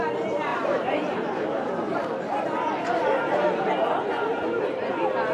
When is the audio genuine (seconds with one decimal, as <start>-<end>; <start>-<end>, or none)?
0.0-0.5; 3.7-5.3